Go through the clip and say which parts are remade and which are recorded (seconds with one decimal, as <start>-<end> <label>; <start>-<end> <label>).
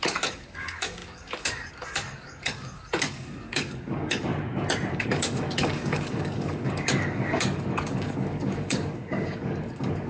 0.0-4.3 remade; 4.3-4.9 recorded; 4.9-10.1 remade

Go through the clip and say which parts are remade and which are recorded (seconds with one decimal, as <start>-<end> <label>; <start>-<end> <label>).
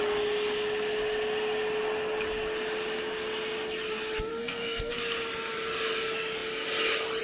0.0-4.3 recorded; 4.3-4.9 remade; 4.9-7.2 recorded